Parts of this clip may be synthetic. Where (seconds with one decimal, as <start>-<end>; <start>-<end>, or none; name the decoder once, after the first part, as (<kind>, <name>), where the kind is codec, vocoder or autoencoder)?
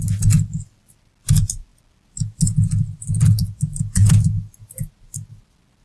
none